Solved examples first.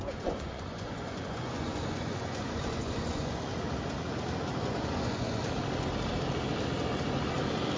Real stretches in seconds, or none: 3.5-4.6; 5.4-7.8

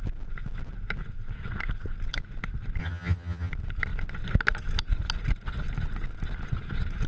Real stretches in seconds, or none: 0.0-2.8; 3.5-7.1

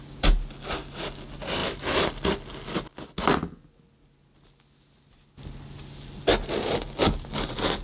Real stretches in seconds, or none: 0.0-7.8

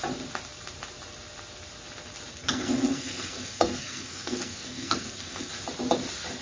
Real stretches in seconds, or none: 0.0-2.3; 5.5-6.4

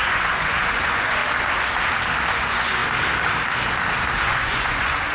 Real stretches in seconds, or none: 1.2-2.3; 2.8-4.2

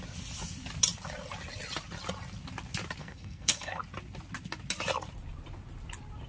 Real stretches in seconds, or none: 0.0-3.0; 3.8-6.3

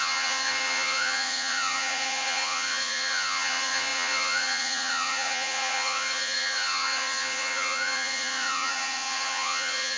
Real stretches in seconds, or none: none